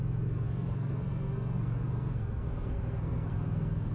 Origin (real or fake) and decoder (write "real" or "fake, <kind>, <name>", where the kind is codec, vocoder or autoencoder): fake, codec, SNAC